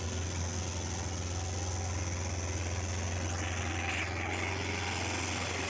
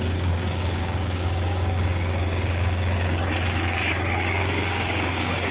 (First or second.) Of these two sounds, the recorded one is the first